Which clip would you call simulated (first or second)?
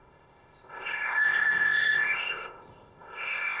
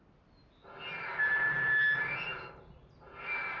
first